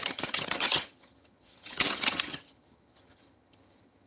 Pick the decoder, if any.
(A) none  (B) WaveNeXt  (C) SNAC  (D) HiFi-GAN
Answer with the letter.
D